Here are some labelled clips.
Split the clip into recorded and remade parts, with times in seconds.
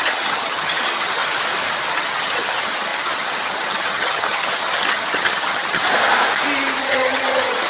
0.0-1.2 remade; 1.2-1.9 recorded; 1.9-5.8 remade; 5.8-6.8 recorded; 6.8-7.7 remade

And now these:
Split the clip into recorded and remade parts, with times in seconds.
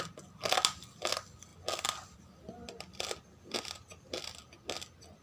0.0-5.2 recorded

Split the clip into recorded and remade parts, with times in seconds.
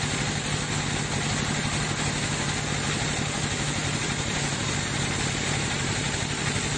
0.0-3.8 recorded; 3.8-6.1 remade; 6.1-6.8 recorded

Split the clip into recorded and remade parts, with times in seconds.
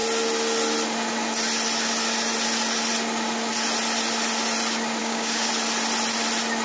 0.0-5.0 recorded; 5.0-5.5 remade; 5.5-6.6 recorded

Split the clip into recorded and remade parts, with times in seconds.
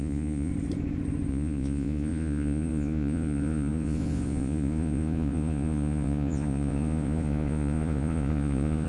0.0-0.5 remade; 0.5-1.3 recorded; 1.3-8.9 remade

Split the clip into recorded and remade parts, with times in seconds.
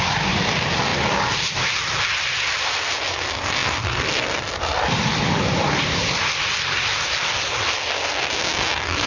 0.0-0.9 remade; 0.9-2.0 recorded; 2.0-6.0 remade; 6.0-8.6 recorded; 8.6-9.1 remade